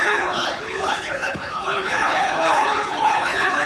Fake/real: fake